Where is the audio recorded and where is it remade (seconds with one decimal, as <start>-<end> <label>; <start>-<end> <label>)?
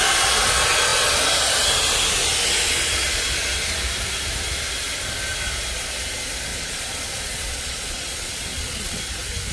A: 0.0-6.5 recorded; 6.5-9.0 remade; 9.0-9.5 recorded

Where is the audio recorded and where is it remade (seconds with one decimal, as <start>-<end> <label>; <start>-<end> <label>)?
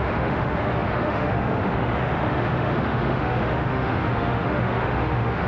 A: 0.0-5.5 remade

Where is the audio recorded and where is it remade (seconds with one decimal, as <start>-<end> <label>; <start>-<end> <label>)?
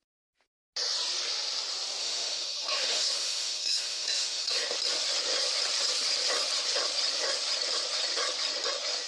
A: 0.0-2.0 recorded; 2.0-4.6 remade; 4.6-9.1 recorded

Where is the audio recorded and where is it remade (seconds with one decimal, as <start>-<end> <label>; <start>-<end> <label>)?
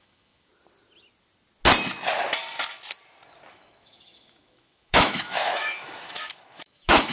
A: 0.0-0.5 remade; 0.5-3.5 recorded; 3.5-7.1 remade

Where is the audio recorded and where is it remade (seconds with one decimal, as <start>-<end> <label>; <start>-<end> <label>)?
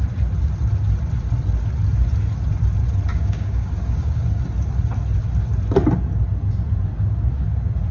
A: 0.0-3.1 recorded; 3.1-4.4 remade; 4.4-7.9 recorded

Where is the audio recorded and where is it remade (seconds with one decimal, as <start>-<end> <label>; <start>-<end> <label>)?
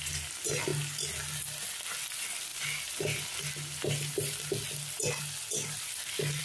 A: 0.0-6.4 recorded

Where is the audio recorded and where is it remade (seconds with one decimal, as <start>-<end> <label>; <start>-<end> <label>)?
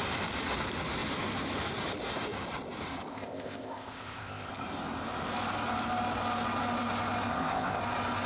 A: 0.0-3.1 recorded; 3.1-4.5 remade; 4.5-7.3 recorded; 7.3-7.8 remade; 7.8-8.3 recorded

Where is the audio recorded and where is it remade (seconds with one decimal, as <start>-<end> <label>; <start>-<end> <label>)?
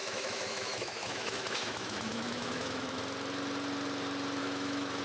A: 0.0-3.0 remade; 3.0-4.4 recorded; 4.4-5.0 remade